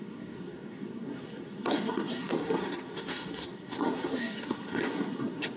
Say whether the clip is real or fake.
fake